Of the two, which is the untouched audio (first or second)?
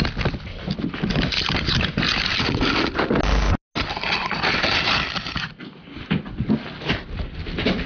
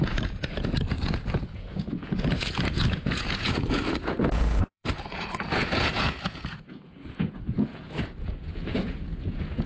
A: first